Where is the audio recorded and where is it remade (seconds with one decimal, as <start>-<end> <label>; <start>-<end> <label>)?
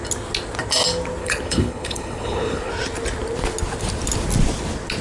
0.0-1.2 recorded; 1.2-2.7 remade; 2.7-5.0 recorded